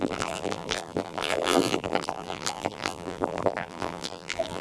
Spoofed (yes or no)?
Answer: yes